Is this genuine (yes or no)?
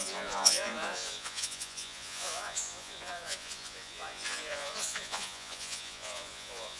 no